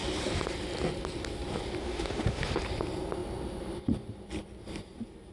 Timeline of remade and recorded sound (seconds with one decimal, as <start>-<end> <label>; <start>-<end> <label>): 0.0-1.8 recorded; 1.8-2.6 remade; 2.6-5.3 recorded